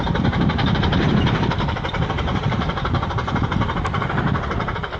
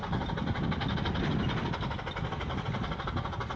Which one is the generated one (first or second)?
first